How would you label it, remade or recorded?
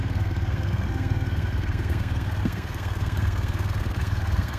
remade